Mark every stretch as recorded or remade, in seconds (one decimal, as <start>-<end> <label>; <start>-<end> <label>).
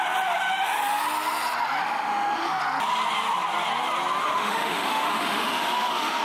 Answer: 0.0-1.8 recorded; 1.8-2.6 remade; 2.6-4.2 recorded; 4.2-6.2 remade